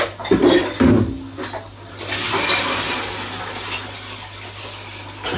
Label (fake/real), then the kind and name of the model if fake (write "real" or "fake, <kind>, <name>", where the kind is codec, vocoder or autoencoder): real